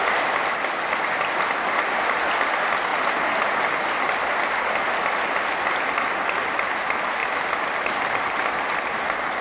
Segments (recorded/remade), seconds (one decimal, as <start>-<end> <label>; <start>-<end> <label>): 0.0-9.4 recorded